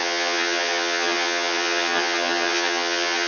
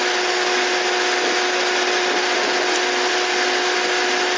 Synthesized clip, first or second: first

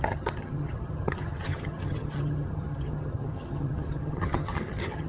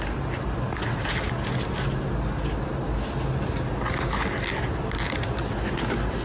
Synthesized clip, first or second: first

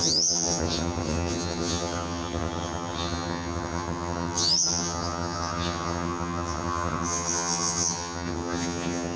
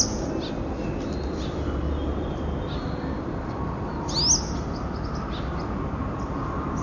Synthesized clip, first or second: first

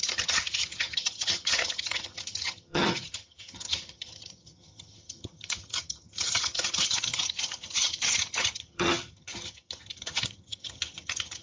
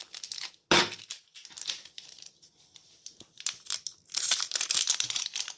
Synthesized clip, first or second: first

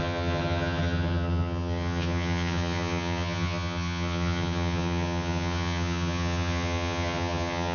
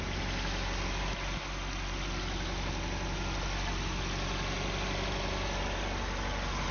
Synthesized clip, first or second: first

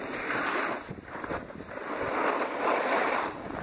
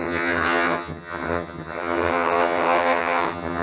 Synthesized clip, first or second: second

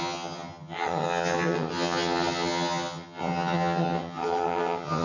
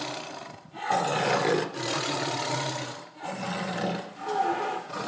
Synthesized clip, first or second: first